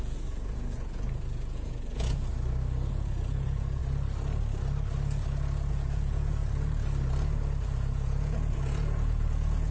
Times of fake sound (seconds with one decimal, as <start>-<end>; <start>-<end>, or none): 0.0-2.3; 2.9-3.8; 5.7-6.4; 7.6-9.7